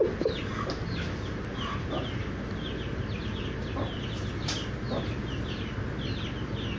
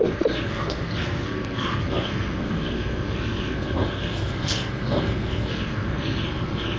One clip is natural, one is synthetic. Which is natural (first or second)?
first